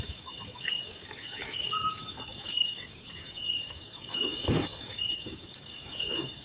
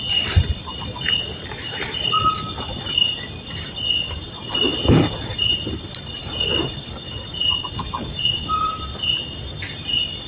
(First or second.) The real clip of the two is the second